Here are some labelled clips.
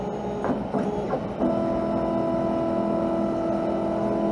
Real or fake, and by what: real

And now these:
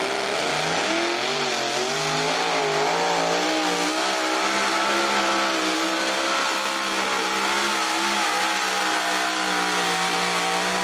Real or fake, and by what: real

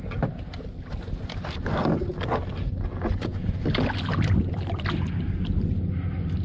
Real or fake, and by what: real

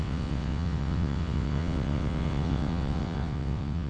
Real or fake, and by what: fake, vocoder, WaveNeXt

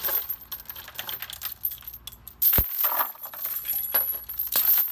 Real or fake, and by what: real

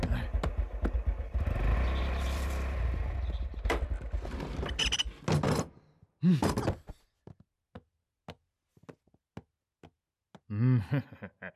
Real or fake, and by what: real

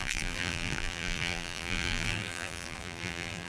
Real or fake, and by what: fake, vocoder, BigVGAN v2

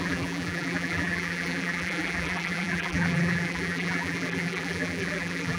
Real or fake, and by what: fake, vocoder, BigVGAN v2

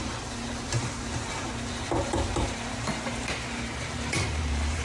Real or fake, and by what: fake, vocoder, BigVGAN v2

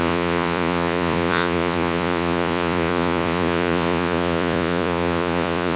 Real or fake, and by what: fake, vocoder, Vocos